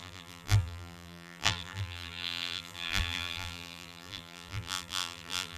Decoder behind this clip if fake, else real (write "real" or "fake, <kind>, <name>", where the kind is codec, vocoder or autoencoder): fake, vocoder, BigVGAN v2